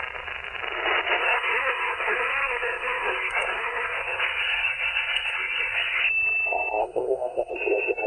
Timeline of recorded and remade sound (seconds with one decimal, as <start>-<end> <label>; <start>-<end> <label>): 0.0-1.2 recorded; 1.2-6.0 remade; 6.0-6.8 recorded; 6.8-7.5 remade; 7.5-8.1 recorded